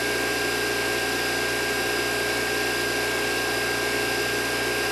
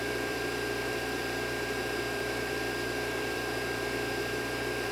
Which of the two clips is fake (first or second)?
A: second